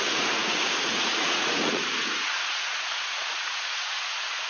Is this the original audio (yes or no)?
no